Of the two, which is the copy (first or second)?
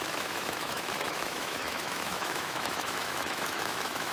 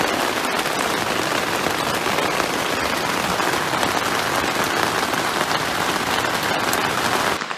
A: first